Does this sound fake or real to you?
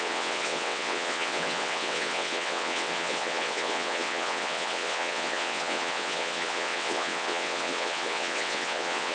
fake